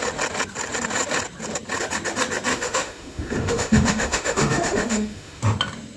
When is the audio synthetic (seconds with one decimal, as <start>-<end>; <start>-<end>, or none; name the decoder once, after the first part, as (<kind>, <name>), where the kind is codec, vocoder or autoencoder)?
2.5-5.4 (autoencoder, DAC-VAE)